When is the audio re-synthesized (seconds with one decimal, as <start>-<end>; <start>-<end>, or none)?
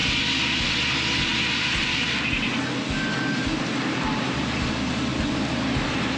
none